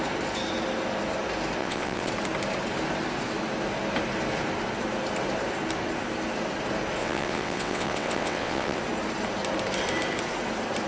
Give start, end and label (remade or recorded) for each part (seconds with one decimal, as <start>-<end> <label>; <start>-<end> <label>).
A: 0.0-1.6 recorded; 1.6-2.1 remade; 2.1-7.0 recorded; 7.0-8.8 remade; 8.8-10.9 recorded